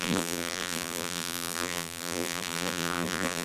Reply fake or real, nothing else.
fake